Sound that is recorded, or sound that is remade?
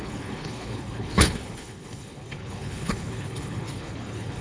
remade